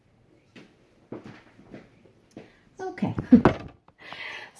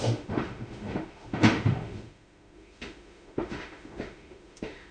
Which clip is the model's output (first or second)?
second